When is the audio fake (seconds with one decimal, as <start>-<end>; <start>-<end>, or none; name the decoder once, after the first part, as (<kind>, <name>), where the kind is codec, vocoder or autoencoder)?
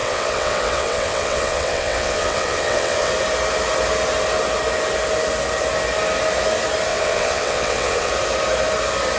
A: 0.0-3.1 (vocoder, WaveNeXt); 6.9-8.1